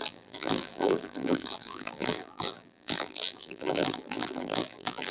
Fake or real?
fake